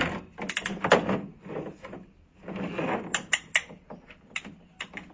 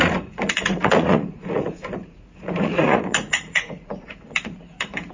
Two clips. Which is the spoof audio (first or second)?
second